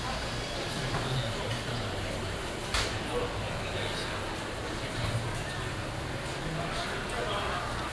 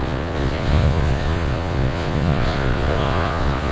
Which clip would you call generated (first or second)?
second